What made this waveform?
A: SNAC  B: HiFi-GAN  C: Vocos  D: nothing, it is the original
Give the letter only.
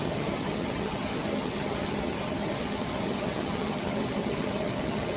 B